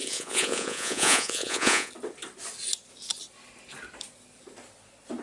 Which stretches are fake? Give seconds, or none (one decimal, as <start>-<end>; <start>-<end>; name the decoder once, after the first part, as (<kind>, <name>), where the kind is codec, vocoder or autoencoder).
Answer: 0.0-1.9 (vocoder, Vocos)

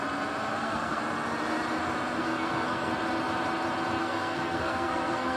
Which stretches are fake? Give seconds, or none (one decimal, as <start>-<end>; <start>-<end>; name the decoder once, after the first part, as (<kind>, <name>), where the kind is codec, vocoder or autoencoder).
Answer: 0.6-1.0 (codec, SNAC); 2.2-2.9; 4.0-5.4

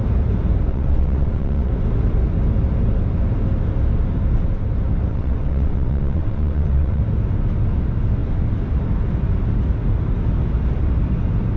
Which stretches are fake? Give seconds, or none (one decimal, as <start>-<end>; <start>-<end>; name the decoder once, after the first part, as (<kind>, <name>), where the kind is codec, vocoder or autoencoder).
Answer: 0.7-1.7 (vocoder, WaveNeXt); 5.1-7.0

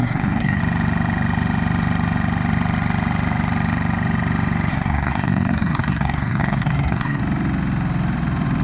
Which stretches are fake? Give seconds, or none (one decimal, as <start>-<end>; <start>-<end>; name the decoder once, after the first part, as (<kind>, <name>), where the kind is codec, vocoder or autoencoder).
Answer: 0.0-0.6 (codec, SNAC); 4.7-7.2

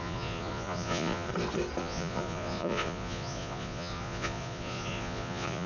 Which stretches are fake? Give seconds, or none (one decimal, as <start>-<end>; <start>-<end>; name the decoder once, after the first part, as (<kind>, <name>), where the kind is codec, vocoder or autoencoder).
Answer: 0.0-1.3 (vocoder, Vocos); 1.8-5.7